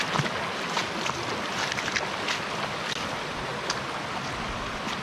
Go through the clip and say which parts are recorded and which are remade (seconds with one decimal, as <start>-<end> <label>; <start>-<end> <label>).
0.0-5.0 recorded